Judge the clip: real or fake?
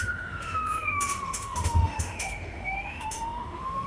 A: fake